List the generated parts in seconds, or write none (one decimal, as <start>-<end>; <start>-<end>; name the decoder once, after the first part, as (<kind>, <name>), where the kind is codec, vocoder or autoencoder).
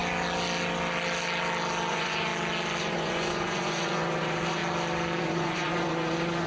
1.9-2.3 (vocoder, Vocos); 2.8-4.6; 5.2-6.5